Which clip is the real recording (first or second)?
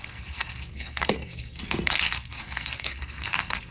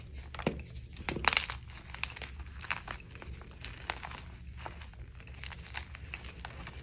second